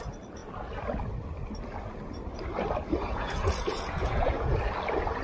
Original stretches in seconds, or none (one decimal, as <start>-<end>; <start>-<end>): 0.0-3.0; 4.6-5.2